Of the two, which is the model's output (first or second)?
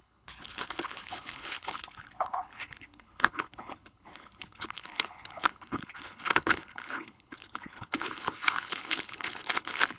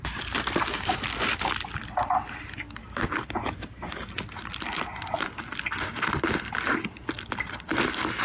first